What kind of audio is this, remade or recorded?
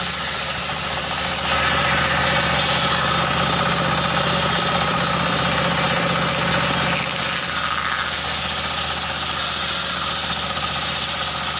recorded